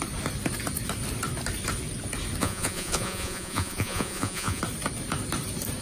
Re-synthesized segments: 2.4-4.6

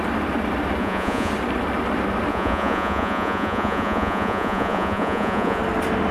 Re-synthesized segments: 0.8-1.3; 2.3-5.6

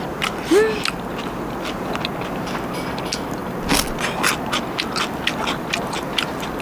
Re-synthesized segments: none

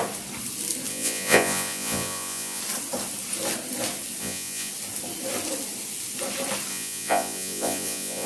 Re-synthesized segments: 0.9-2.6; 4.2-4.7; 6.7-8.3

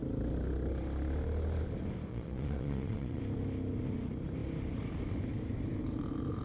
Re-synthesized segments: 2.1-3.2

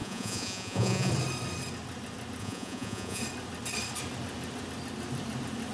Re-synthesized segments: 0.0-1.1; 2.4-3.2

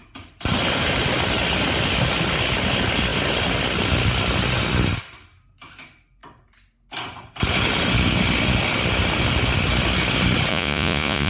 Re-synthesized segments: 10.5-11.3

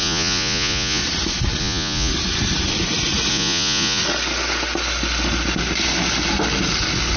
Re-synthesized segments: 0.0-1.0; 1.6-2.1; 3.3-4.0